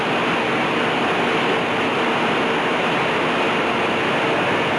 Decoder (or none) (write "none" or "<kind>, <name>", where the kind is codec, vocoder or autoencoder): none